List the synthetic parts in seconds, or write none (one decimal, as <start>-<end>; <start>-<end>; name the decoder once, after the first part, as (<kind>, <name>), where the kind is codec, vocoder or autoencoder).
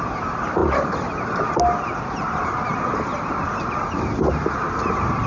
none